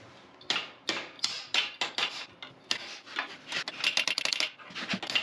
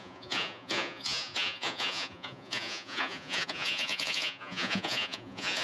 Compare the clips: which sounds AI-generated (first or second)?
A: second